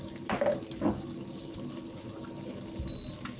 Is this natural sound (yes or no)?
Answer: yes